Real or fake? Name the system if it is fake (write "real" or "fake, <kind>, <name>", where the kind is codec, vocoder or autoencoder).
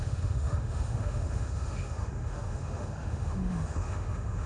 fake, autoencoder, DAC-VAE